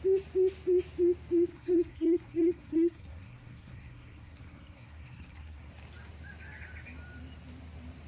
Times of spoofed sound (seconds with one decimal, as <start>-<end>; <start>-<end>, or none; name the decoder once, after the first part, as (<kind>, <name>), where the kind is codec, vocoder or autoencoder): 1.5-5.7 (codec, SNAC)